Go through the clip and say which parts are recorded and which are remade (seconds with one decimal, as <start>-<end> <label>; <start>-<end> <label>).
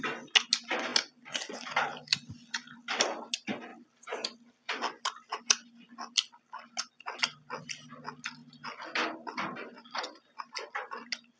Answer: 0.0-11.4 recorded